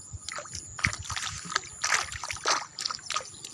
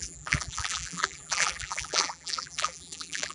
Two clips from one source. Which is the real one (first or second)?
first